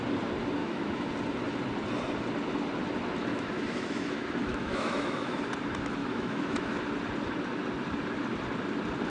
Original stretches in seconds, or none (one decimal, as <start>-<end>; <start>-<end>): 0.0-0.6; 1.1-3.3; 5.4-6.0; 6.8-9.1